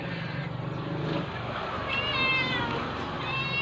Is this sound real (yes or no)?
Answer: yes